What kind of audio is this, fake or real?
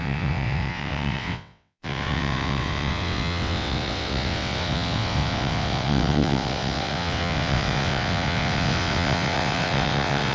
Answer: fake